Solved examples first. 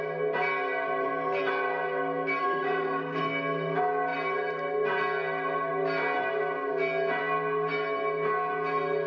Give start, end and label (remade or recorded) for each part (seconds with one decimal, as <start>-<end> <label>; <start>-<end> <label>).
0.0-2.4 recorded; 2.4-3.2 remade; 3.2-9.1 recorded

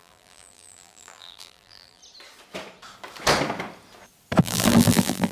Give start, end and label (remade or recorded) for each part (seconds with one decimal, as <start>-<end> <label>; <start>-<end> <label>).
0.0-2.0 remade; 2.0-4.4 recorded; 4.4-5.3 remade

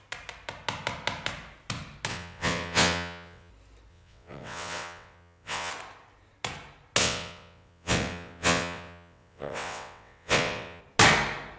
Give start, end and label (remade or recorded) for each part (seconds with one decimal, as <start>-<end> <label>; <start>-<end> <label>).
0.0-2.1 recorded; 2.1-3.5 remade; 3.5-3.9 recorded; 3.9-5.7 remade; 5.7-7.0 recorded; 7.0-10.8 remade; 10.8-11.6 recorded

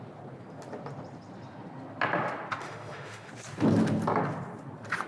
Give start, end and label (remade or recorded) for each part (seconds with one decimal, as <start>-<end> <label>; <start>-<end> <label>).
0.0-2.6 recorded; 2.6-3.3 remade; 3.3-5.1 recorded

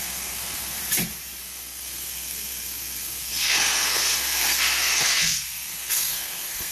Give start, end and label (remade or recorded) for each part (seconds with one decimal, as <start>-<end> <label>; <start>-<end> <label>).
0.0-0.8 remade; 0.8-1.4 recorded; 1.4-6.7 remade